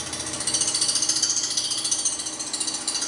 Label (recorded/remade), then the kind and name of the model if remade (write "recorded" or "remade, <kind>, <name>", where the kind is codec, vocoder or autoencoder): recorded